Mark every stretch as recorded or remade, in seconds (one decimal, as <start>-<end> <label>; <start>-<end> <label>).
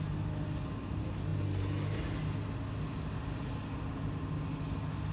0.0-5.1 recorded